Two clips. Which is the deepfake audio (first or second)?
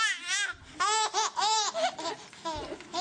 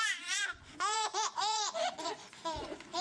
second